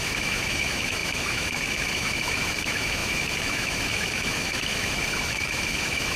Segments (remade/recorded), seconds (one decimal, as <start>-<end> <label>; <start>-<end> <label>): 0.0-6.2 remade